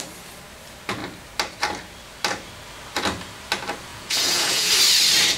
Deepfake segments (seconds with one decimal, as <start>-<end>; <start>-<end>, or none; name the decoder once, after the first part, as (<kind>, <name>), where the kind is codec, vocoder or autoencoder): 3.9-4.7 (vocoder, Vocos)